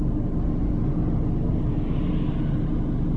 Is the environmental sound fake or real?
real